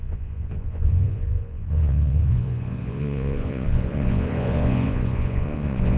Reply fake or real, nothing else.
fake